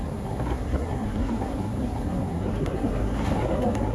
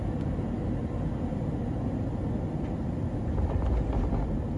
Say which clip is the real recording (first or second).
second